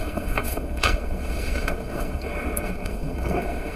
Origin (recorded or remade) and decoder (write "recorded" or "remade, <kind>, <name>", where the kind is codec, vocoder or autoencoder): remade, codec, SNAC